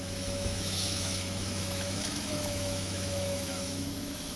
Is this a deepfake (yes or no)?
yes